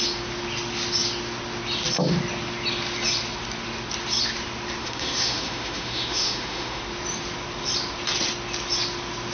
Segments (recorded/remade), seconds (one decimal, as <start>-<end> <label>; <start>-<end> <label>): 0.0-4.8 recorded; 4.8-6.8 remade; 6.8-9.3 recorded